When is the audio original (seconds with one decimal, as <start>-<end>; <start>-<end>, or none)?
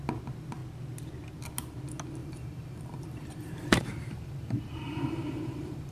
0.0-2.2